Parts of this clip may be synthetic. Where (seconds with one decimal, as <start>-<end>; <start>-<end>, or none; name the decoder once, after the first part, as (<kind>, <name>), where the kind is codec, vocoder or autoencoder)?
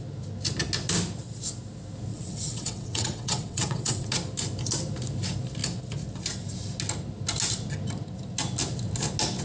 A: 2.1-4.1 (vocoder, WaveNeXt)